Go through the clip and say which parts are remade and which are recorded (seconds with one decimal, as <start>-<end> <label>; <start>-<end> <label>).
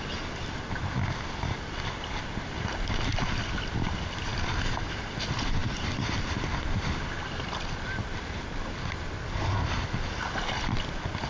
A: 0.0-11.3 recorded